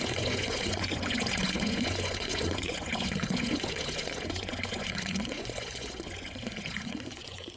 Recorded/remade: remade